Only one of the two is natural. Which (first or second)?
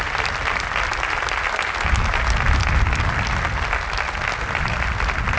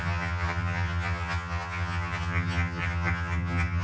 first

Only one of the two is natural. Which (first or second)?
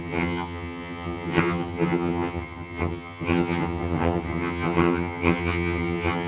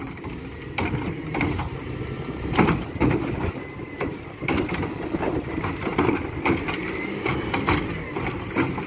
second